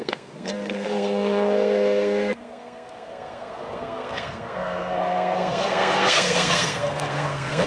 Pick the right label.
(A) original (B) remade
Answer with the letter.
B